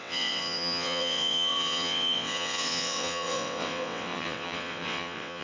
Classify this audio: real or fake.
fake